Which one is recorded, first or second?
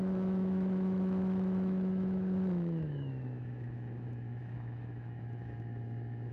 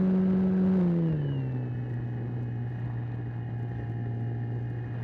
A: second